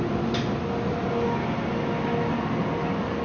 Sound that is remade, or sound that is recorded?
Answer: recorded